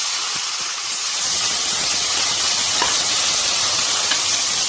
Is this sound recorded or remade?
remade